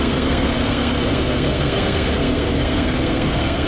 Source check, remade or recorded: remade